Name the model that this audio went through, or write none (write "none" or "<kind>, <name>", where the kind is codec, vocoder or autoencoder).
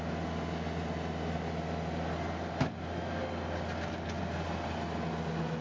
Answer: none